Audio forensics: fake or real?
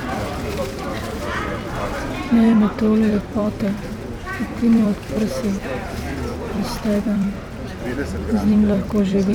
fake